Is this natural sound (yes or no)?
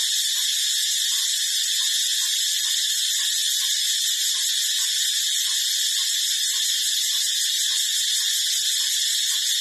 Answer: yes